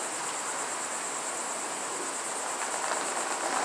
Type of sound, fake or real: fake